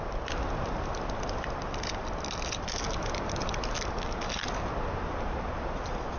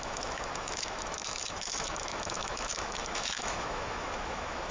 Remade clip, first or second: second